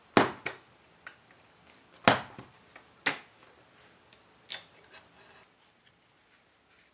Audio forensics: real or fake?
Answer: real